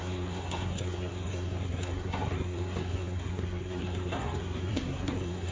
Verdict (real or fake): fake